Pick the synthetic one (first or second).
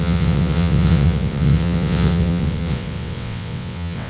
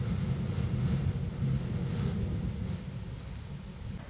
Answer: first